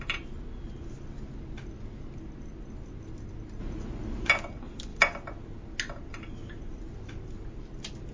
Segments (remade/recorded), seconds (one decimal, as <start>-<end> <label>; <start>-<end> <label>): 0.0-3.6 recorded; 3.6-4.3 remade; 4.3-8.1 recorded